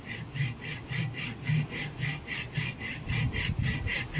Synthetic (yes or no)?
no